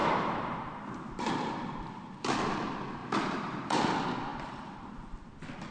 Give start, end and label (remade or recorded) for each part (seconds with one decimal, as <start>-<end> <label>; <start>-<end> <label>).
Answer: 0.0-2.3 remade; 2.3-3.0 recorded; 3.0-3.8 remade; 3.8-4.3 recorded; 4.3-5.3 remade; 5.3-5.7 recorded